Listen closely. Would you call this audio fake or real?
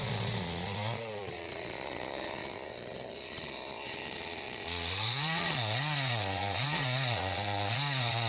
fake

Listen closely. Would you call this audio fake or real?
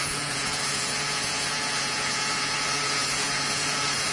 fake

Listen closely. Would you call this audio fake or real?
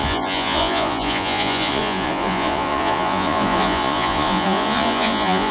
fake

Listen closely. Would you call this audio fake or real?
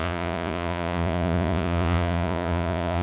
fake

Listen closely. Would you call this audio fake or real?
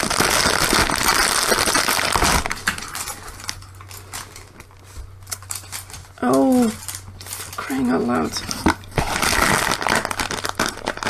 real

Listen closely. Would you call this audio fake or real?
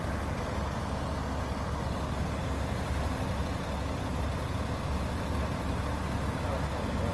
real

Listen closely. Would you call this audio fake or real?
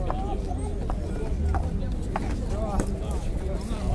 real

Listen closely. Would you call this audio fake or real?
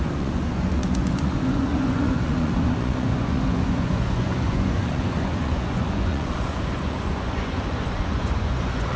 fake